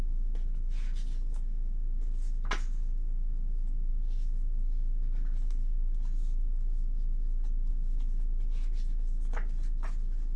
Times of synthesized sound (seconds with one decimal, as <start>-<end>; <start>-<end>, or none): none